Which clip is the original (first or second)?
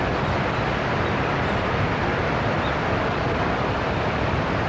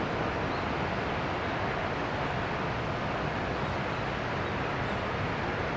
second